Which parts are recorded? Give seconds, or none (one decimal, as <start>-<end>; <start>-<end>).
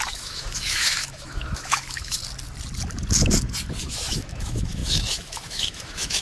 2.2-3.8